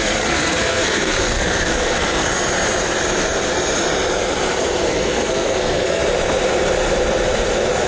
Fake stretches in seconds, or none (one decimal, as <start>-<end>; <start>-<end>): 0.0-2.3; 4.9-6.0